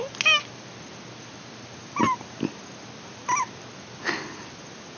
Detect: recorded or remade recorded